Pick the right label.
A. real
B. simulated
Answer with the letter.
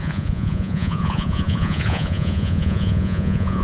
B